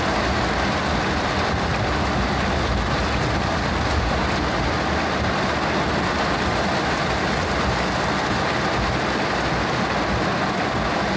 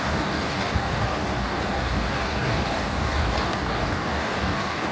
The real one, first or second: first